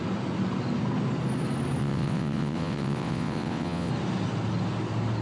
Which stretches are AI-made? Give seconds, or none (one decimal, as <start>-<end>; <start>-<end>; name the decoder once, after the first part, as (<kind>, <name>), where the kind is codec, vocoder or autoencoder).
1.8-3.9 (vocoder, WaveNeXt)